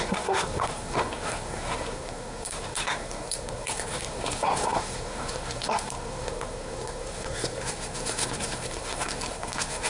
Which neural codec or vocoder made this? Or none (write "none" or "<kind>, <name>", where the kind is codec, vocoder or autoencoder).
codec, SNAC